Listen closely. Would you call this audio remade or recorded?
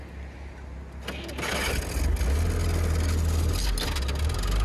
recorded